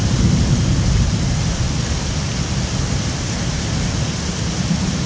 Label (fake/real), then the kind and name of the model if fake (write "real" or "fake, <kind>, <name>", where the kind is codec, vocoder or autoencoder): real